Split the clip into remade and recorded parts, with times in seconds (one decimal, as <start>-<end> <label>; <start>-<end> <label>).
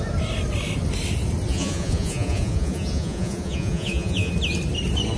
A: 0.0-1.5 recorded; 1.5-4.3 remade; 4.3-5.2 recorded